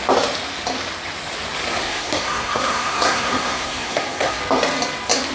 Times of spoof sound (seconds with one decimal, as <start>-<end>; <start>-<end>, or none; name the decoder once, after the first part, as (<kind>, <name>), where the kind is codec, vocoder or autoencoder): 1.8-4.4 (codec, SNAC)